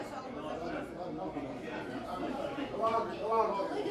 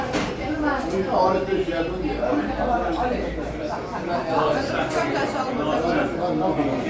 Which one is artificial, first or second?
first